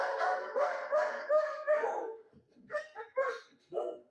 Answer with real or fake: fake